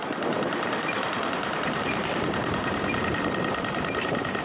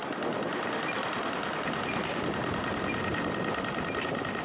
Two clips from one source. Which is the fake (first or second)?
first